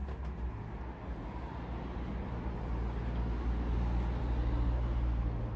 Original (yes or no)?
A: yes